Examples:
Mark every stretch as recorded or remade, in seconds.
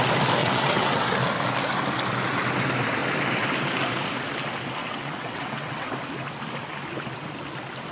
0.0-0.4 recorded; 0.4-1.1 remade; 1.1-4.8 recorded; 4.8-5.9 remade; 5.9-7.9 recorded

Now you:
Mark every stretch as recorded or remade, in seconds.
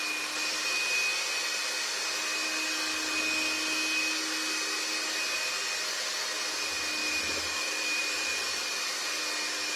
0.0-7.0 recorded; 7.0-9.0 remade; 9.0-9.8 recorded